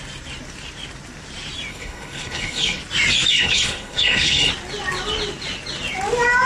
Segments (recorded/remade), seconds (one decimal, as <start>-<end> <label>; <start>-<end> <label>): 0.0-1.7 recorded; 1.7-2.8 remade; 2.8-3.3 recorded; 3.3-4.5 remade; 4.5-6.5 recorded